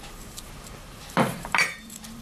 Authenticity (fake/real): fake